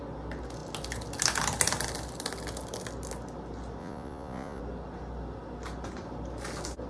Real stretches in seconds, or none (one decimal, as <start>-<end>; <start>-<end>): 0.0-3.8; 4.6-6.9